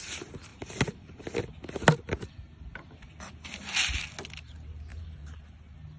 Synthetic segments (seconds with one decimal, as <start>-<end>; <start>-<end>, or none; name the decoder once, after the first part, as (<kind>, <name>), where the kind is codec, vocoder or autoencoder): 4.9-5.5 (vocoder, BigVGAN v2)